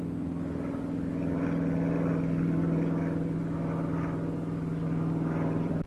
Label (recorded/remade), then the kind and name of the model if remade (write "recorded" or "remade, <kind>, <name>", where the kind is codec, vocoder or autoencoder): remade, vocoder, BigVGAN v2